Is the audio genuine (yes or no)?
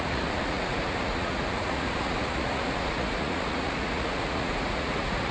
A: no